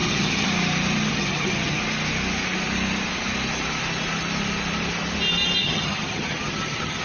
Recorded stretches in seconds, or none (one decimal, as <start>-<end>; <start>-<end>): 0.5-1.1; 1.8-5.6